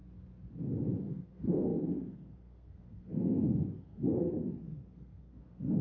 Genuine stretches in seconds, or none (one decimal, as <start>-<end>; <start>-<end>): 0.0-1.0